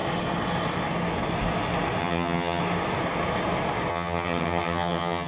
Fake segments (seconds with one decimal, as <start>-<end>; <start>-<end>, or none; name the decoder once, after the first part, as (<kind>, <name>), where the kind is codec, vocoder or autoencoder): 2.0-2.6 (vocoder, HiFi-GAN); 3.9-5.3